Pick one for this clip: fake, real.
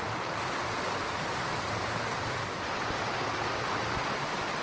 real